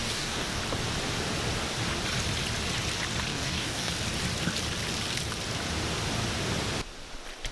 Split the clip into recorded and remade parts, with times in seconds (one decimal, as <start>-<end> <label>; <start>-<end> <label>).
0.0-0.6 remade; 0.6-3.3 recorded; 3.3-3.9 remade; 3.9-7.5 recorded